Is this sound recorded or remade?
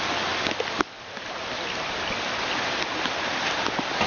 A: recorded